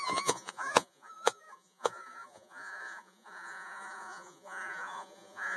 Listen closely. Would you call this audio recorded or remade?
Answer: remade